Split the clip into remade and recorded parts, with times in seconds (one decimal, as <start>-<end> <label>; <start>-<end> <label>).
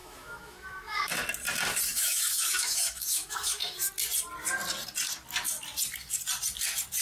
0.0-1.1 remade; 1.1-1.9 recorded; 1.9-3.9 remade; 3.9-7.0 recorded